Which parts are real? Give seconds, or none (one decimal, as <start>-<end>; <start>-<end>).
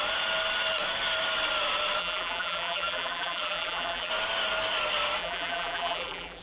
0.0-2.0; 4.1-5.2